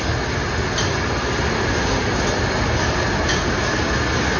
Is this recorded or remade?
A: recorded